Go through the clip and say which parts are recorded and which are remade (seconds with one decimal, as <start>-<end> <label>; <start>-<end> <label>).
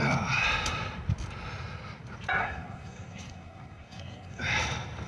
0.0-2.4 recorded; 2.4-4.4 remade; 4.4-5.1 recorded